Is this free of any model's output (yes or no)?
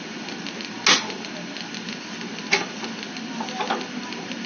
yes